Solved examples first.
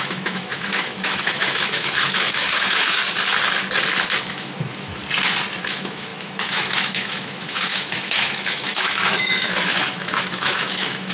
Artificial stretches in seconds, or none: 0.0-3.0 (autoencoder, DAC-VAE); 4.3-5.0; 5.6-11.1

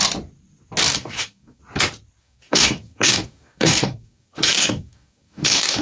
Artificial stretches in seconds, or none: 0.9-1.6 (codec, DAC); 2.2-5.8

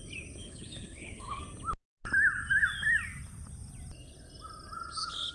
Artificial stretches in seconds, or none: 0.4-1.4 (codec, HILCodec)

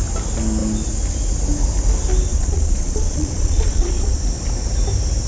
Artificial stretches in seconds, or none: 2.3-4.2 (vocoder, Vocos)

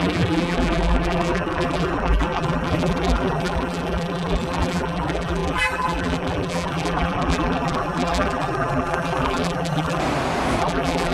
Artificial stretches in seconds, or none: 0.0-10.0 (vocoder, BigVGAN v2); 10.6-11.1

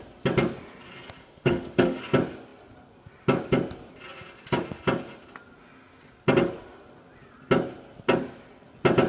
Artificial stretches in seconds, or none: 1.2-2.0 (autoencoder, DAC-VAE)

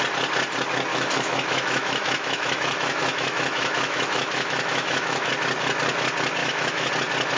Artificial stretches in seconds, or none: 0.9-5.3 (autoencoder, DAC-VAE); 6.4-6.9

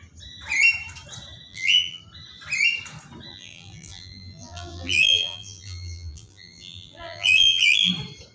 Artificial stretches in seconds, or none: 1.5-2.0 (vocoder, BigVGAN v2); 3.3-7.9